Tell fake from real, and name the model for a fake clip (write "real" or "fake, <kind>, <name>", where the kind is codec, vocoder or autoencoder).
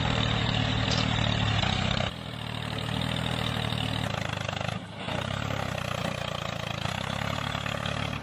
real